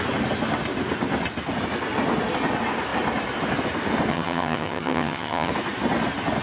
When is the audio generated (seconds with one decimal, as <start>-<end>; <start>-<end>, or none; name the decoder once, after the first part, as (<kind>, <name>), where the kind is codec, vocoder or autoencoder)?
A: 4.1-5.5 (vocoder, HiFi-GAN)